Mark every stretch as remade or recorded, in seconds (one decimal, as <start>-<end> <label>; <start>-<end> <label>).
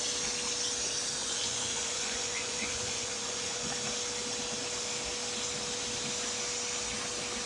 0.0-1.2 recorded; 1.2-3.7 remade; 3.7-7.5 recorded